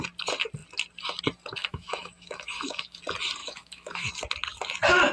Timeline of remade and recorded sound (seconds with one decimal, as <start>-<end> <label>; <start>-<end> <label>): 0.0-1.6 recorded; 1.6-3.0 remade; 3.0-3.4 recorded; 3.4-4.1 remade; 4.1-5.1 recorded